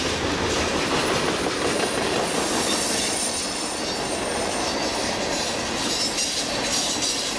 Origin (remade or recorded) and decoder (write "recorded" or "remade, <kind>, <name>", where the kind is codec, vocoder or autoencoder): recorded